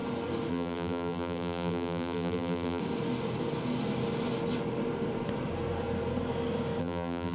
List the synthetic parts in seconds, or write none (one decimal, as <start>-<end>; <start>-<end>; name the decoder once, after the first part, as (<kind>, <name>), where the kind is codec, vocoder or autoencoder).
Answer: 0.5-2.8 (vocoder, BigVGAN v2); 6.8-7.3